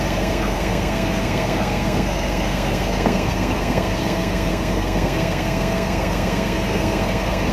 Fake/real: fake